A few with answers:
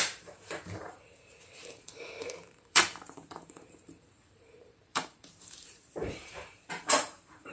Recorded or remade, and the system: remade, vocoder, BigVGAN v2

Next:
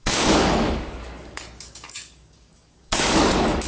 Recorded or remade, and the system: remade, codec, DAC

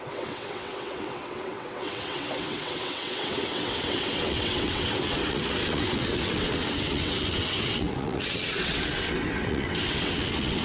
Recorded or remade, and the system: remade, vocoder, WaveNeXt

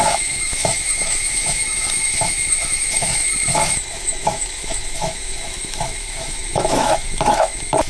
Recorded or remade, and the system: remade, autoencoder, DAC-VAE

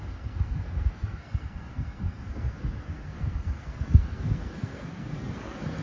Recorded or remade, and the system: remade, codec, SNAC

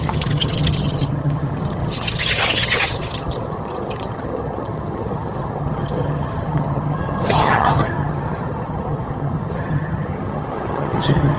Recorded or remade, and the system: remade, vocoder, HiFi-GAN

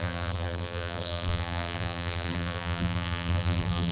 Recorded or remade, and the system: remade, vocoder, BigVGAN v2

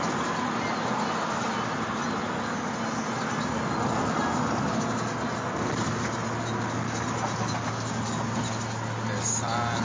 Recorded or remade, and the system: recorded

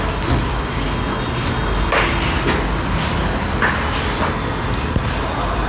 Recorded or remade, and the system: recorded